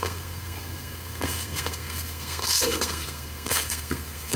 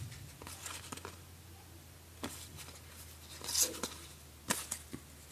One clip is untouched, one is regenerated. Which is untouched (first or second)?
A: second